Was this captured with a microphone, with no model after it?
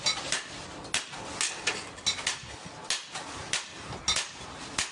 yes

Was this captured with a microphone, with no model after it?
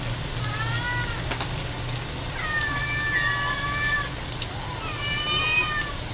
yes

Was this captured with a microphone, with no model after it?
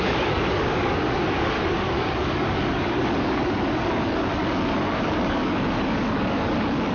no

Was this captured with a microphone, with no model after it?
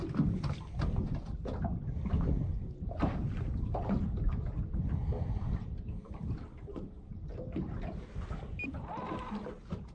yes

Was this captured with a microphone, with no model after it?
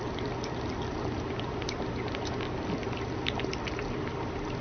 yes